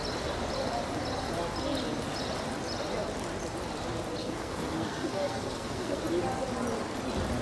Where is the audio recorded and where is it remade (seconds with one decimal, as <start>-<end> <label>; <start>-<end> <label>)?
0.0-4.2 recorded; 4.2-6.0 remade; 6.0-7.4 recorded